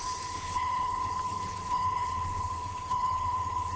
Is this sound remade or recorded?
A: remade